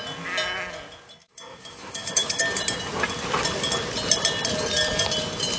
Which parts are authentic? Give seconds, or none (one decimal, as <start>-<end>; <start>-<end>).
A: 0.0-1.2; 2.4-5.6

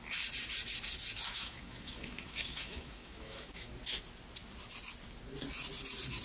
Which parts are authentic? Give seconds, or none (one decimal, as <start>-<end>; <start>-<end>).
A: 0.0-1.3; 3.7-6.2

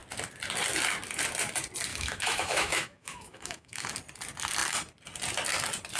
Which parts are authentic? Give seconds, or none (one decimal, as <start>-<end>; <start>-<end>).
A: 0.0-1.9; 3.9-6.0